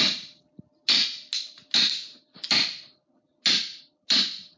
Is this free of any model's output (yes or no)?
yes